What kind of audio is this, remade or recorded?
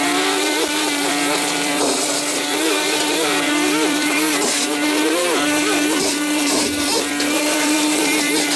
remade